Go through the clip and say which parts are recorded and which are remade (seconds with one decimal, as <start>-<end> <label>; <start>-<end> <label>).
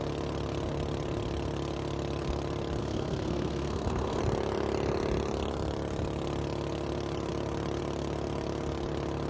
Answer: 0.0-2.8 recorded; 2.8-4.2 remade; 4.2-9.3 recorded